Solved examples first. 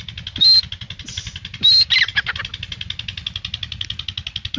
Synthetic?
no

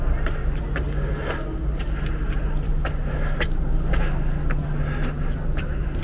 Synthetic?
no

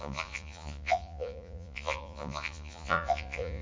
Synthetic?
yes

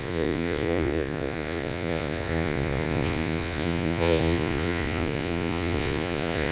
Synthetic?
yes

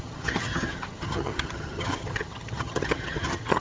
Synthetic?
yes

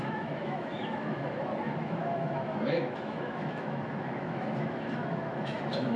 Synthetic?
yes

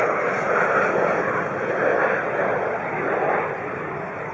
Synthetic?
no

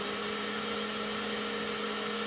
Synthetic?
no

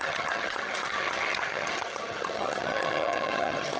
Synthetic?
yes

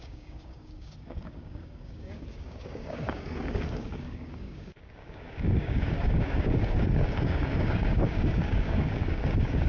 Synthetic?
yes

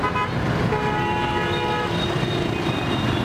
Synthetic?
no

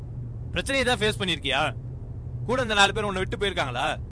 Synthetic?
yes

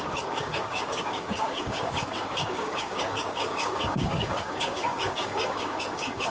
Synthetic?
yes